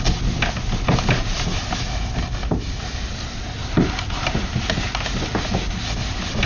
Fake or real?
real